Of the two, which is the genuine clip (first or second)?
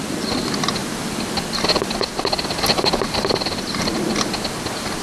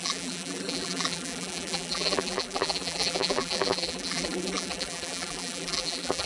first